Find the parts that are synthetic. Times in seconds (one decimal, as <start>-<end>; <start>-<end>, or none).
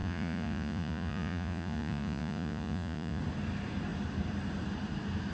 0.0-3.2